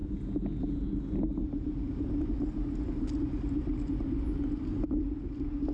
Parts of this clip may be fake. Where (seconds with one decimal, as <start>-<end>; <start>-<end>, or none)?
none